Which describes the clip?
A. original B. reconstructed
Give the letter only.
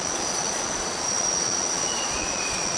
B